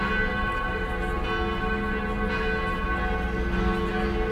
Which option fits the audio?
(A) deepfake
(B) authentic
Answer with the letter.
B